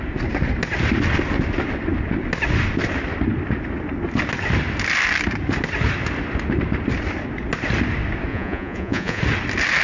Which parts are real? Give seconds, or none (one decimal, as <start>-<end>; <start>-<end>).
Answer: 0.0-8.3; 9.2-9.8

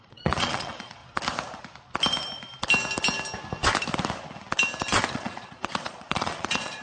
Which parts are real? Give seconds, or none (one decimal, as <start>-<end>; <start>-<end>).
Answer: 1.0-5.1

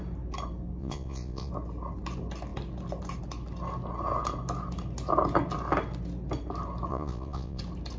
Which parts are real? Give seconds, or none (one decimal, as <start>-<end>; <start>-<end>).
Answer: 0.0-0.8; 1.5-6.9; 7.6-8.0

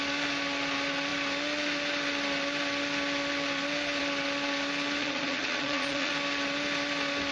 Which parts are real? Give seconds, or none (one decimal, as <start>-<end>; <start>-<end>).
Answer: 0.0-5.0; 6.1-7.3

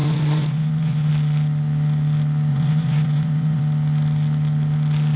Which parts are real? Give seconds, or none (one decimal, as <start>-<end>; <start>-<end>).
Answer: 1.1-2.5; 3.6-5.2

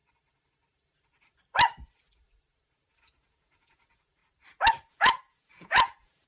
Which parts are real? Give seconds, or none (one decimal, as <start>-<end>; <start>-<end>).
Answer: 0.0-3.0; 4.2-4.9

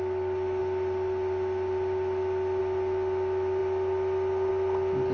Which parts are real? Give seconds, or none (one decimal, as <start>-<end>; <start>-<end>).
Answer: 0.0-5.1